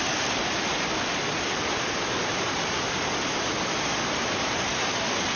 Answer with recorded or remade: recorded